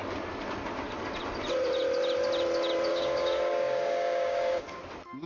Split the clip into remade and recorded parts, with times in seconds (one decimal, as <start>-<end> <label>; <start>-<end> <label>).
0.0-2.9 recorded; 2.9-4.8 remade; 4.8-5.3 recorded